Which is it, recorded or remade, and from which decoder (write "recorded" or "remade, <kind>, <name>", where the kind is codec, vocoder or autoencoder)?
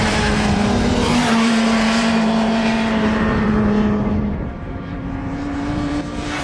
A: remade, vocoder, BigVGAN v2